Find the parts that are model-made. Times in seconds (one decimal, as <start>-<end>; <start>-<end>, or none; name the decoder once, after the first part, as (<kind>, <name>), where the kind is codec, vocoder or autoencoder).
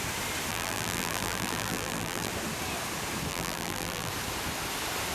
0.5-2.3 (vocoder, BigVGAN v2); 3.3-4.1